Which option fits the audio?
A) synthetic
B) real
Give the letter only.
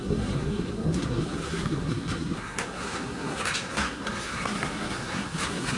A